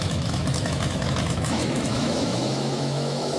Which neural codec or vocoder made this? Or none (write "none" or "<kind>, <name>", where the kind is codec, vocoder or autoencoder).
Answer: autoencoder, DAC-VAE